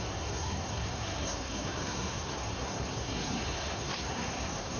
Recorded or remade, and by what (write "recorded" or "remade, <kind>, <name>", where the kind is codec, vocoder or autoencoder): remade, codec, SNAC